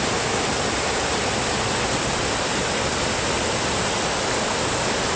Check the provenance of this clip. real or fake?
real